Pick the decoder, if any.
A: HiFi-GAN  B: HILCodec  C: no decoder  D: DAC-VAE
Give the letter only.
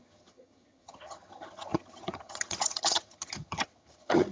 A